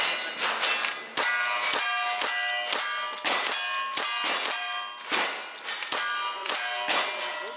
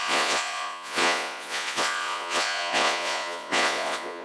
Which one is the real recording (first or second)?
first